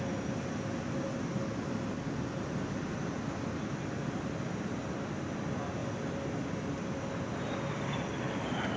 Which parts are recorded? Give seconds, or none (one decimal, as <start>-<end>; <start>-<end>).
0.0-8.8